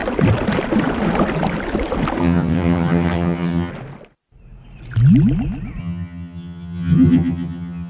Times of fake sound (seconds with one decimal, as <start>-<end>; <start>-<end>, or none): 2.2-3.7; 5.8-7.9